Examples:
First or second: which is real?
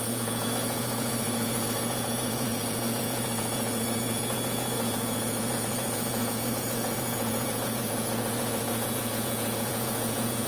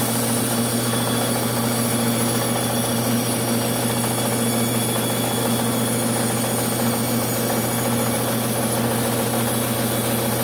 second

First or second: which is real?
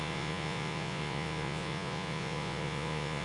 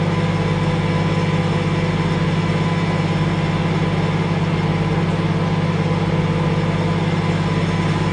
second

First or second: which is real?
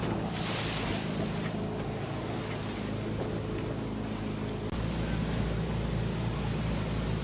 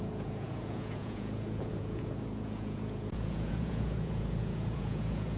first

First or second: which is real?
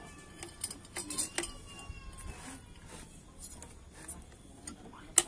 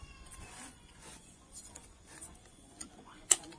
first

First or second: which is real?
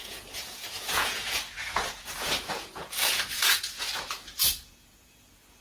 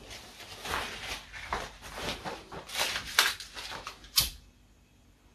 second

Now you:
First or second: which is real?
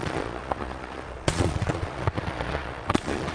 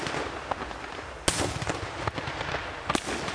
second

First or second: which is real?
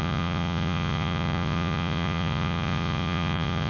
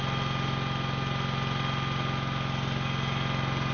second